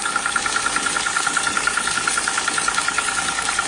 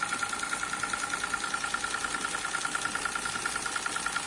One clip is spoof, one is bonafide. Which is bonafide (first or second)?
second